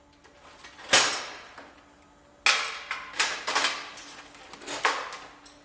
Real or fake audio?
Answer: real